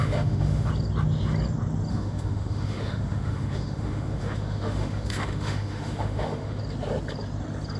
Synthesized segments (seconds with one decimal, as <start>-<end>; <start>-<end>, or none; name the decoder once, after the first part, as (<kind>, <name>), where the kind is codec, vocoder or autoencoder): 0.0-0.7 (autoencoder, DAC-VAE); 1.9-6.6